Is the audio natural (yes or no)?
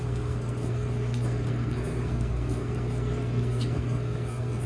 no